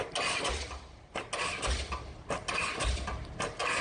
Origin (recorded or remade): recorded